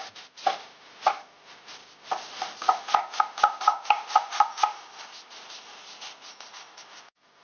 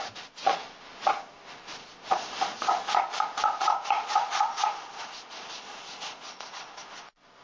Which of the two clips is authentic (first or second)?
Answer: first